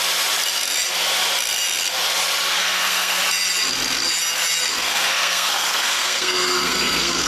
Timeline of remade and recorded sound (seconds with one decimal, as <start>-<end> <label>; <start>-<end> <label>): 0.0-2.6 recorded; 2.6-3.2 remade; 3.2-4.7 recorded; 4.7-7.3 remade